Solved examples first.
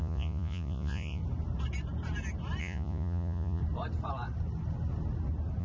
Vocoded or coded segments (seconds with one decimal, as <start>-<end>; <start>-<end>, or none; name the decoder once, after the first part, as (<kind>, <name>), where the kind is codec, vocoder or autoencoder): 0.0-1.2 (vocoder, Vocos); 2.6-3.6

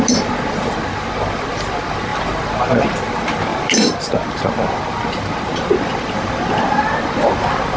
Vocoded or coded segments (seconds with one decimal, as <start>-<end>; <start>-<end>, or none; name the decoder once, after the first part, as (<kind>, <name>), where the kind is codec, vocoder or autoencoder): 3.5-4.4 (vocoder, BigVGAN v2); 5.9-7.8

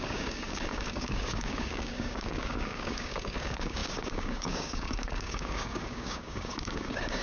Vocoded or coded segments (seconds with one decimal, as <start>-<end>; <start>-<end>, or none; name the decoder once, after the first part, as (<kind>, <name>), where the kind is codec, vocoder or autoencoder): 0.0-7.2 (codec, DAC)

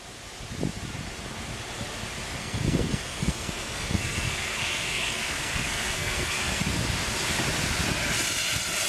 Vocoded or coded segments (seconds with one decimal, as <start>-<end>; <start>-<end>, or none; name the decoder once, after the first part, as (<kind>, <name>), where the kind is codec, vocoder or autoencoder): 2.4-6.6 (codec, SNAC)

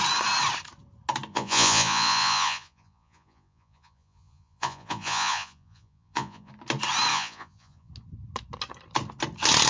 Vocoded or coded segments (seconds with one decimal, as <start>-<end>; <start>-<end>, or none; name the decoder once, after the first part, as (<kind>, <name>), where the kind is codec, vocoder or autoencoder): 1.3-6.5 (vocoder, Vocos); 7.1-7.9

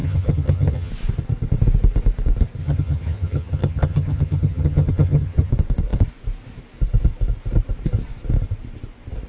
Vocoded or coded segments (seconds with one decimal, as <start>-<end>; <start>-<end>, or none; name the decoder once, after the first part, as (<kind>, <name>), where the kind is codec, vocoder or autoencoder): 0.0-0.9 (vocoder, HiFi-GAN); 2.6-5.5